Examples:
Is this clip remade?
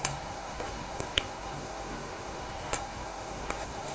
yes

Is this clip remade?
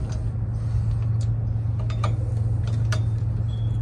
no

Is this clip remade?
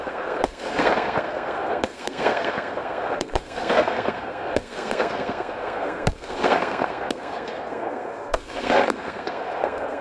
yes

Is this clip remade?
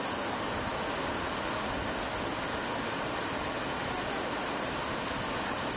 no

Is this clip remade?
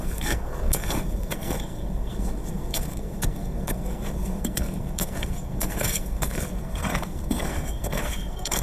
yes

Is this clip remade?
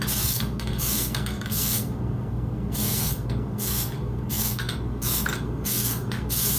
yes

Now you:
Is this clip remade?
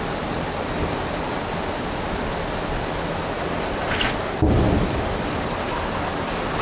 no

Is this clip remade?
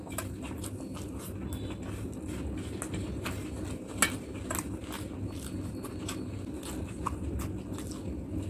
no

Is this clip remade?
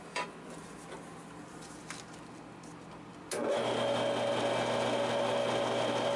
no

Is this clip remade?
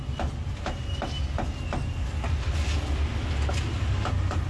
no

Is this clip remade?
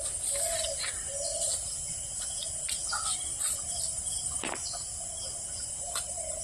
no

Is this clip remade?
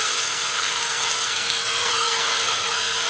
yes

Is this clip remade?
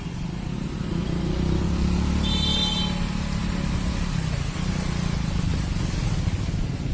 no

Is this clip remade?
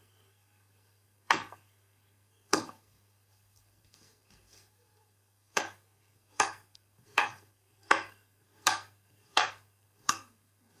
yes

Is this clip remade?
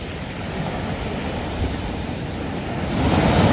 no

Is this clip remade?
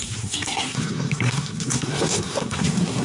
yes